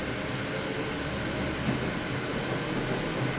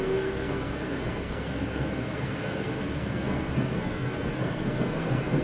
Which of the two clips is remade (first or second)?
second